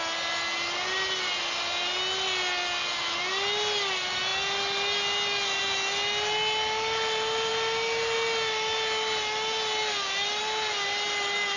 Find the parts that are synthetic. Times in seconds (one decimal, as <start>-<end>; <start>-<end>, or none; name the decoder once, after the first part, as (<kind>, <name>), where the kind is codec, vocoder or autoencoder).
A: none